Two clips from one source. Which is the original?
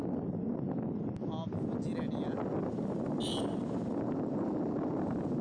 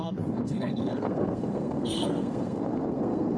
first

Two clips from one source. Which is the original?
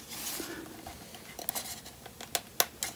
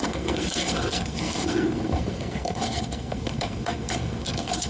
first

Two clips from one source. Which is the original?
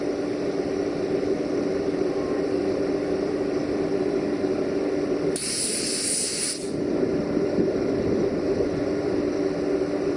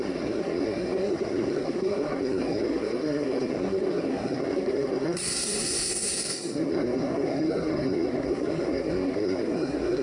first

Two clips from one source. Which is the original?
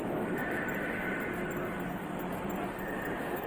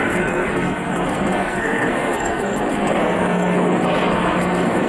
first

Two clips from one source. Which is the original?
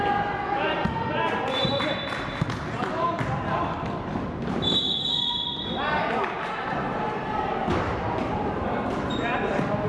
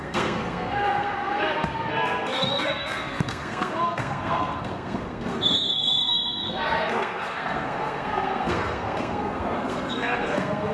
first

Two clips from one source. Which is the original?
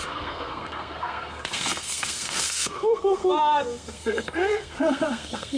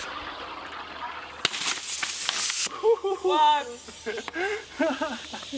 second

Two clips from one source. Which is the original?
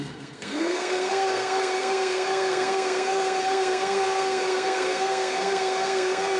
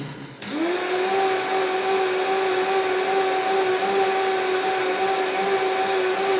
second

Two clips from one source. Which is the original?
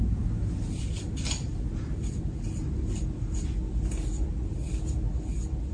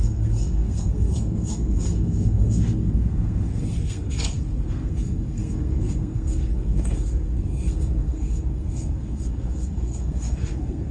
first